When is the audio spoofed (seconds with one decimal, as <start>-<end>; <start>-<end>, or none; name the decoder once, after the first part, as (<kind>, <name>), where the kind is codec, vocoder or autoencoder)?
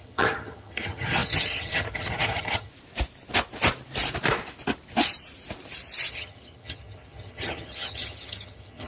0.0-2.7 (vocoder, HiFi-GAN); 6.1-8.9